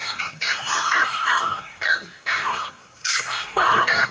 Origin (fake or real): fake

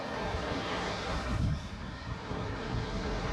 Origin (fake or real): fake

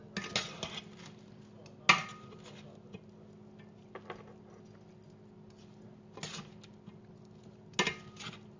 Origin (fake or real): real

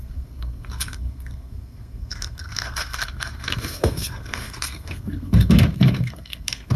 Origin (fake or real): fake